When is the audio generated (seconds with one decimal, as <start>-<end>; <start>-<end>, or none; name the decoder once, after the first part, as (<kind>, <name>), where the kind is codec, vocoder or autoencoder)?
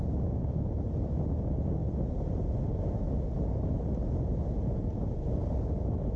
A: none